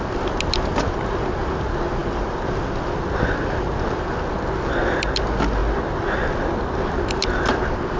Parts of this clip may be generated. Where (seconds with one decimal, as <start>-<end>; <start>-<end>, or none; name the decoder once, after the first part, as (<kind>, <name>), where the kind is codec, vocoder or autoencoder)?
none